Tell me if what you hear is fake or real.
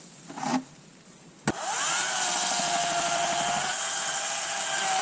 real